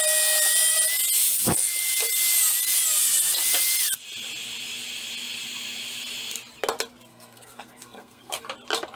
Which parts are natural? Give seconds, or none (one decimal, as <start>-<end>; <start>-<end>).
0.0-7.1; 8.4-9.0